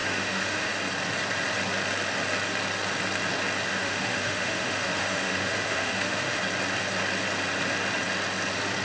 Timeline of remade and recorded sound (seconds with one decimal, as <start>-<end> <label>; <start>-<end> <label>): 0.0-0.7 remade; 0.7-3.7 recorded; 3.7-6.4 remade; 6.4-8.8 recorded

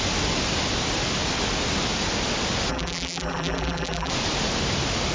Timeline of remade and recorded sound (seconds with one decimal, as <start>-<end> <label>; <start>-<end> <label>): 0.0-2.7 recorded; 2.7-4.1 remade; 4.1-5.1 recorded

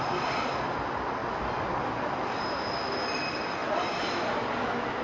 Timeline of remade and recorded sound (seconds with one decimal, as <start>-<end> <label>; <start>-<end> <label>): 0.0-5.0 recorded